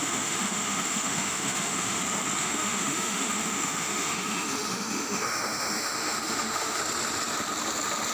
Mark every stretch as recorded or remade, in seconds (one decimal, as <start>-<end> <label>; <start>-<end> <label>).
0.0-2.0 remade; 2.0-2.4 recorded; 2.4-6.8 remade; 6.8-8.1 recorded

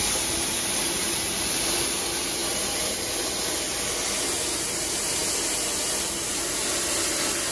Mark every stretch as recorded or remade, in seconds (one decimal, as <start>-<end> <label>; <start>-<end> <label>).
0.0-7.5 recorded

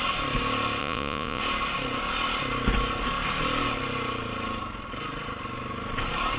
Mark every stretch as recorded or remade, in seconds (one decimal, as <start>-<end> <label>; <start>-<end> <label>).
0.0-0.8 recorded; 0.8-1.4 remade; 1.4-6.4 recorded